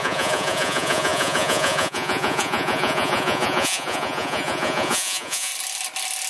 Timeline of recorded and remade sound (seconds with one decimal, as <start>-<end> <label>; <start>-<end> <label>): 0.0-5.5 remade; 5.5-6.3 recorded